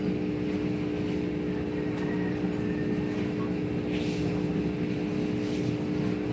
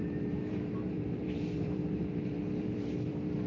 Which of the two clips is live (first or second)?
first